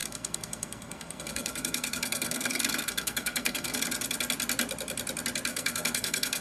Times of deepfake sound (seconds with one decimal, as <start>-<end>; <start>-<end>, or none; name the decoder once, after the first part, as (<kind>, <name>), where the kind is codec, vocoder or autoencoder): 0.0-3.8 (codec, SNAC); 5.5-6.4